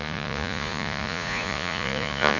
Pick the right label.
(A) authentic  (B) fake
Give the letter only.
B